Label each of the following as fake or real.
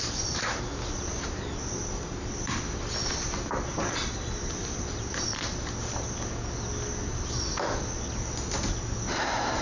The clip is real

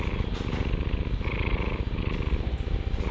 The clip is real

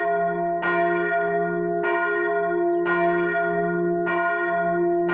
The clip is real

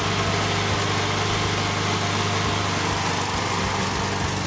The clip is real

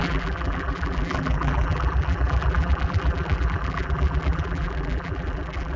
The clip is fake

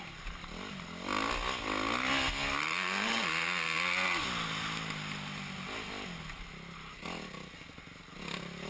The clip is real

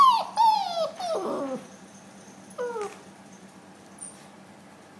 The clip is fake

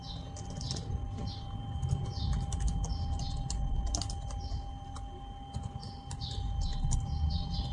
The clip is real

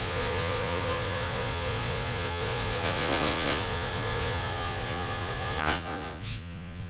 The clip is fake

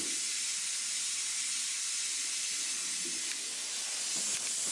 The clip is real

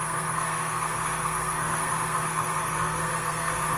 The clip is fake